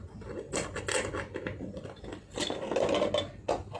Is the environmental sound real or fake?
real